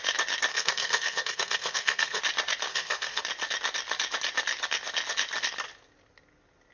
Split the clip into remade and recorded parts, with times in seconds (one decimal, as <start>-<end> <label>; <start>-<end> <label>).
0.0-0.5 recorded; 0.5-2.2 remade; 2.2-2.7 recorded; 2.7-3.2 remade; 3.2-6.7 recorded